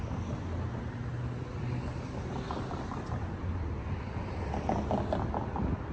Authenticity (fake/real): real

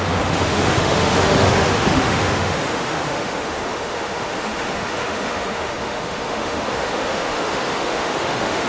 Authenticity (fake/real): fake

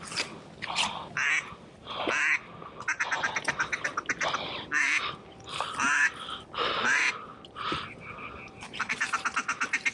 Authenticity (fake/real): real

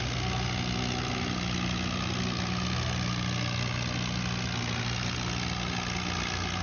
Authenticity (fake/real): real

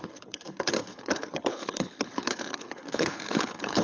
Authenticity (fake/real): fake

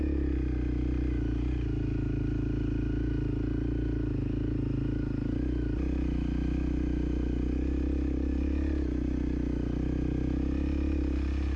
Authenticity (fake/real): real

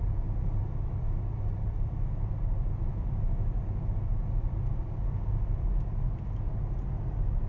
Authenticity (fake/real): real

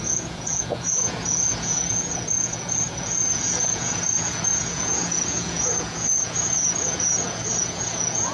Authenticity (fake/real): fake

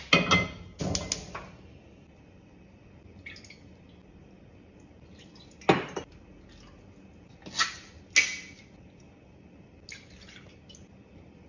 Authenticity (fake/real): real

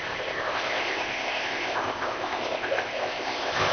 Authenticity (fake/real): fake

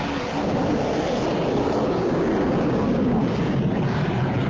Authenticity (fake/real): real